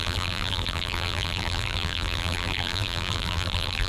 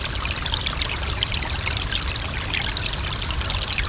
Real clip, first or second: second